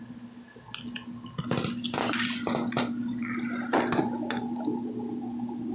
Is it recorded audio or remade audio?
recorded